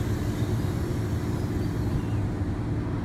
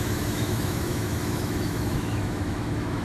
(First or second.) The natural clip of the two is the first